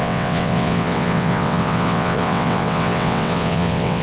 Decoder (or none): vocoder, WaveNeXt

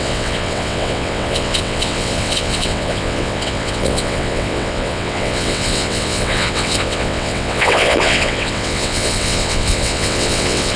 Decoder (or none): vocoder, WaveNeXt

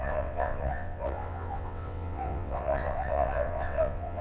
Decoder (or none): vocoder, WaveNeXt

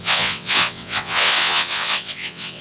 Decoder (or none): vocoder, WaveNeXt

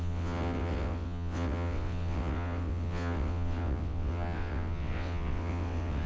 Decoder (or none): vocoder, WaveNeXt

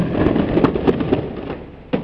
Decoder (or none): none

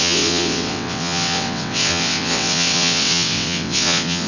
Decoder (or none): vocoder, WaveNeXt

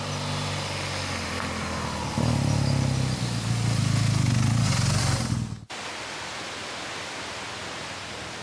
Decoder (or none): none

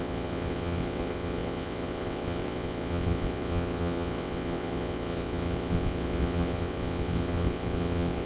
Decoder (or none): vocoder, WaveNeXt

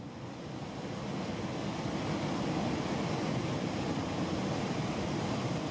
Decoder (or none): none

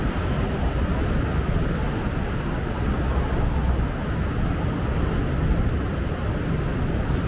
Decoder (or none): none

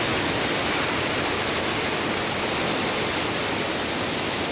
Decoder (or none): none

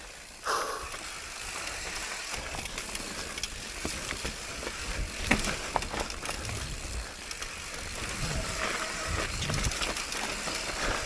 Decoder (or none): none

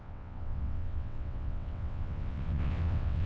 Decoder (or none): vocoder, WaveNeXt